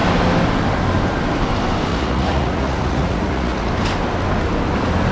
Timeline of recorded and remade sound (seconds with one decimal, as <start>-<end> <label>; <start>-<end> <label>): 0.0-1.9 recorded; 1.9-3.7 remade; 3.7-5.1 recorded